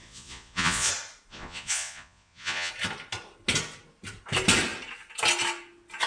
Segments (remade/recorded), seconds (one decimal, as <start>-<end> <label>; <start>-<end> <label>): 0.0-0.9 remade; 0.9-1.3 recorded; 1.3-2.7 remade; 2.7-6.1 recorded